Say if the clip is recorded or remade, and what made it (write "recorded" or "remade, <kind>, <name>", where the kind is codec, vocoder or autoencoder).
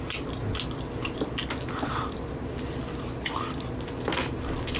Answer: recorded